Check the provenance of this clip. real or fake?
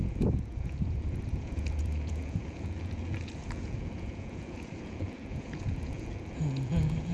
fake